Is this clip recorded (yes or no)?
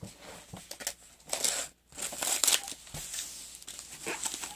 yes